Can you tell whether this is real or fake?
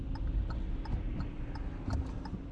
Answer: real